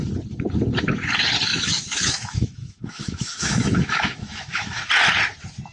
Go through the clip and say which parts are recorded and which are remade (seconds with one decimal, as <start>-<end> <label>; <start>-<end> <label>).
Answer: 0.0-1.5 recorded; 1.5-4.9 remade; 4.9-5.7 recorded